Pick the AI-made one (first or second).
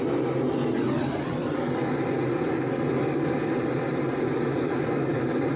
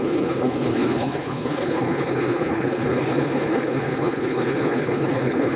second